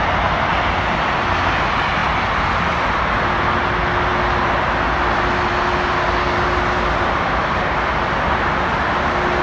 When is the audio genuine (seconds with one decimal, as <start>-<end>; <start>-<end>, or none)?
0.0-9.4